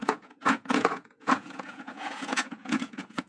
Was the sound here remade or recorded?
remade